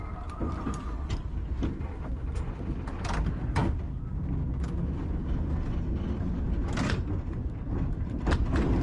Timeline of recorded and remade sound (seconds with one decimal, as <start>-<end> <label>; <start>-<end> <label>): 0.0-8.8 recorded